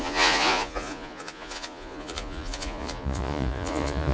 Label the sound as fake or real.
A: fake